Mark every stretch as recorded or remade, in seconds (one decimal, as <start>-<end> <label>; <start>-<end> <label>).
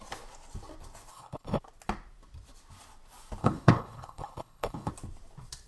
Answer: 0.0-1.1 recorded; 1.1-1.6 remade; 1.6-3.4 recorded; 3.4-4.9 remade; 4.9-5.7 recorded